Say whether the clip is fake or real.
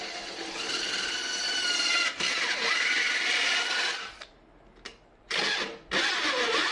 real